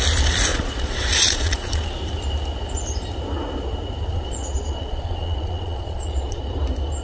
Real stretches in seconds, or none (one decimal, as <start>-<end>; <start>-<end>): 0.0-0.5; 2.0-4.1; 6.4-7.0